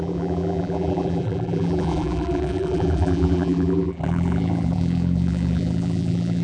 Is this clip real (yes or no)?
no